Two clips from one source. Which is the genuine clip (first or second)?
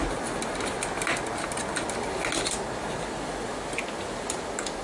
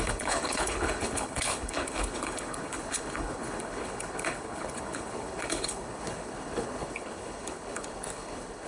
first